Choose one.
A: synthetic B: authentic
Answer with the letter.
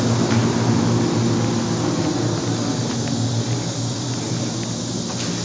B